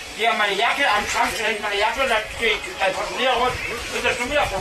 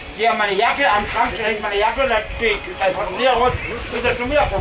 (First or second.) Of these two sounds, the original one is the second